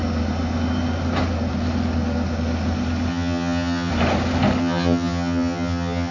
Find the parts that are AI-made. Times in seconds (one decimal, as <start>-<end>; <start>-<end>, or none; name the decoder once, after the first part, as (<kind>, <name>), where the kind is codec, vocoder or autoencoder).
3.1-3.9 (vocoder, HiFi-GAN); 4.6-6.1